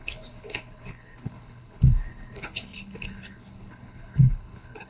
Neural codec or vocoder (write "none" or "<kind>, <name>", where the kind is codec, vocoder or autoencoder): codec, HILCodec